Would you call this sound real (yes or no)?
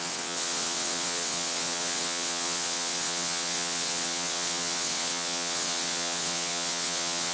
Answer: no